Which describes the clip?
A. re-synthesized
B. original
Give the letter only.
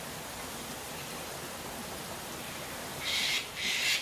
B